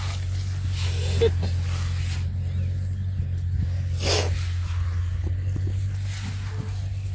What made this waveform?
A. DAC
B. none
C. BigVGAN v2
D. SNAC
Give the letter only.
B